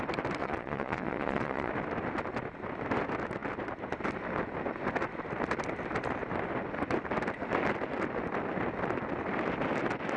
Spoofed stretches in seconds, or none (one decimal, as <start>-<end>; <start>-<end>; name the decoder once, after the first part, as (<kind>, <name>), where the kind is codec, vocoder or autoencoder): 0.4-1.7 (vocoder, Vocos)